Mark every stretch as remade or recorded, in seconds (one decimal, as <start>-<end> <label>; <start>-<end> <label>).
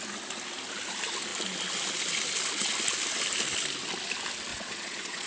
0.0-4.5 recorded; 4.5-5.3 remade